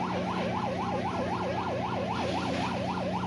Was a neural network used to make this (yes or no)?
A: no